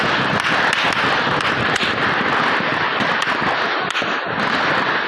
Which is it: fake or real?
real